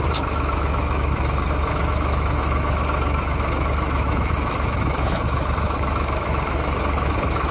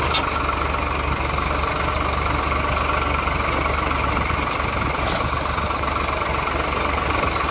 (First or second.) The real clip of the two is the second